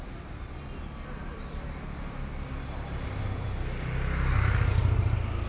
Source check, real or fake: real